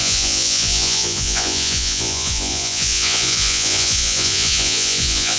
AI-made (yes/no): yes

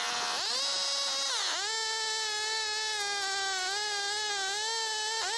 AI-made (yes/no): no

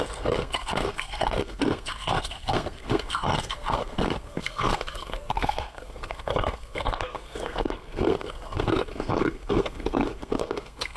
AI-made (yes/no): yes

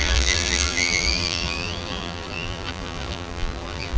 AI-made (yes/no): yes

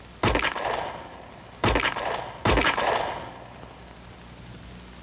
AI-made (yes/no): no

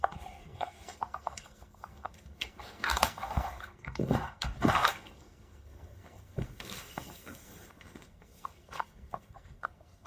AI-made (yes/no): yes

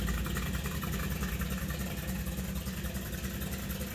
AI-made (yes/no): no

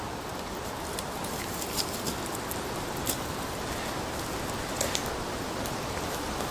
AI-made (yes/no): no